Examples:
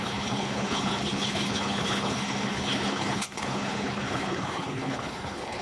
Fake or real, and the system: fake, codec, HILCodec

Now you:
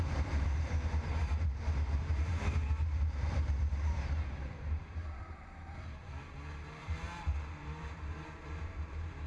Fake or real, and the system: fake, vocoder, BigVGAN v2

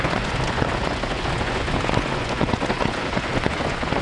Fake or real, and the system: fake, vocoder, Vocos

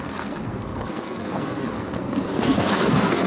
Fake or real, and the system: fake, codec, SNAC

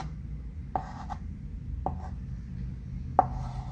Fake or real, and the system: real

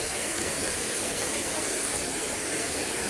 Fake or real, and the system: fake, codec, SNAC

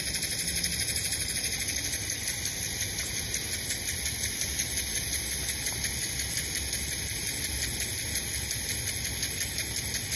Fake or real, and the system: real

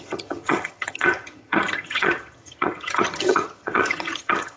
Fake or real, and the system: fake, vocoder, HiFi-GAN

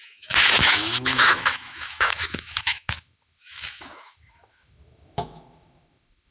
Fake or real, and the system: fake, autoencoder, DAC-VAE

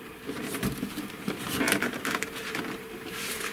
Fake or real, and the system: fake, vocoder, BigVGAN v2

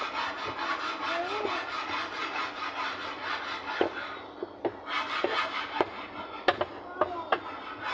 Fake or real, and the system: real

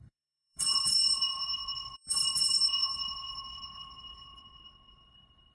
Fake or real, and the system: fake, codec, HILCodec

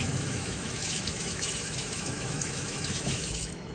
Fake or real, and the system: fake, autoencoder, DAC-VAE